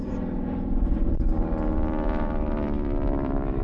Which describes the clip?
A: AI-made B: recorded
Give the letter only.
A